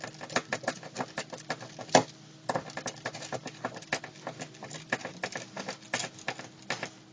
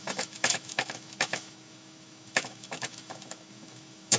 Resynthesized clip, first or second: second